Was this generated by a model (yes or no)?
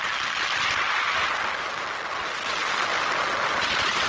no